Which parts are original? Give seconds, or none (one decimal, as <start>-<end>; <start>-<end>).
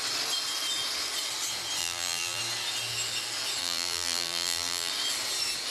0.0-1.8; 2.4-3.6; 4.9-5.7